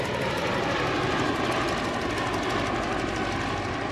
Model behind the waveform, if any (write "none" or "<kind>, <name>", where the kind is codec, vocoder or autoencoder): none